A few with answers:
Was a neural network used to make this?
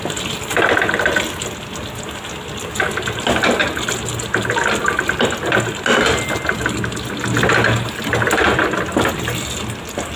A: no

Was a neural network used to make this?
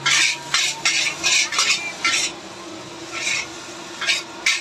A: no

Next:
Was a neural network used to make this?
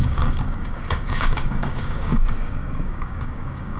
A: yes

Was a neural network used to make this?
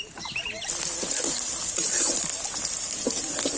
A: no